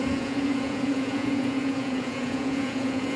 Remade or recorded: remade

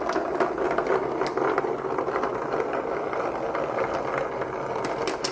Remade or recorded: recorded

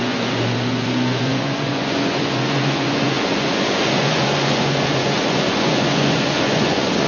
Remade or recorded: remade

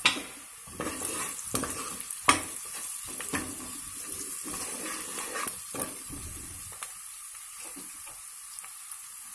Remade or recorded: remade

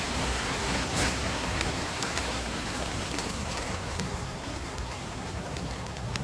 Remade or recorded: remade